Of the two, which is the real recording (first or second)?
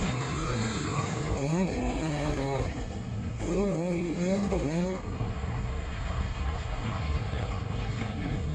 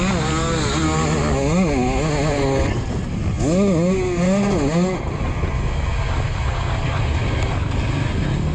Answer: second